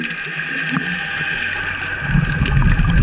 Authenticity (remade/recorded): recorded